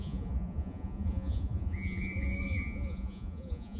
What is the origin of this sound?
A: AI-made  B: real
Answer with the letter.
A